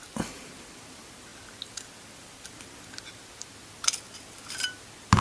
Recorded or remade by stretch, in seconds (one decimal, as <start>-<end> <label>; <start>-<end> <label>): 0.0-5.2 recorded